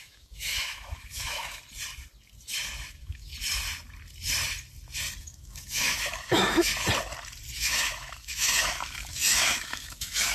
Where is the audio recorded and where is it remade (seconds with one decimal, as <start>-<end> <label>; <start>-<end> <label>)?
0.0-1.6 remade; 1.6-2.9 recorded; 2.9-3.3 remade; 3.3-5.2 recorded; 5.2-6.7 remade; 6.7-7.5 recorded; 7.5-10.3 remade